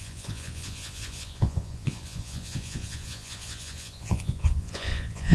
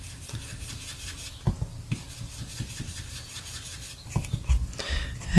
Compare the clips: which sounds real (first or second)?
second